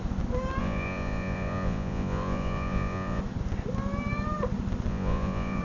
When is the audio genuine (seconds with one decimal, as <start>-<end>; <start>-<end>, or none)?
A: 0.0-0.6; 3.2-4.9